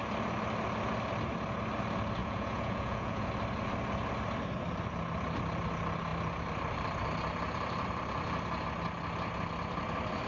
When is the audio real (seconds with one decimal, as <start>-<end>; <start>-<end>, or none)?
0.0-2.2; 3.3-10.3